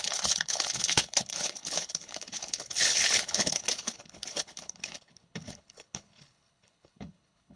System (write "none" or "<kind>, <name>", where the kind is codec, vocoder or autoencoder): codec, HILCodec